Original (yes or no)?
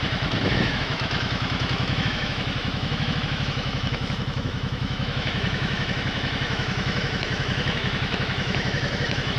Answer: no